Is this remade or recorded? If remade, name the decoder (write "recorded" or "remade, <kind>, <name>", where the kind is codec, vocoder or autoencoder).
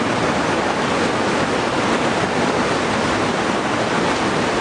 recorded